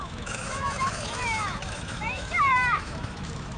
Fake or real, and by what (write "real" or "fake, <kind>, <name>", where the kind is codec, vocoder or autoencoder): fake, autoencoder, DAC-VAE